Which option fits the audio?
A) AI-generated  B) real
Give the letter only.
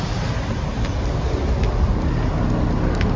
B